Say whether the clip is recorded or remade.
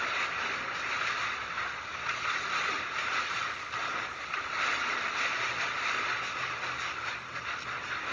remade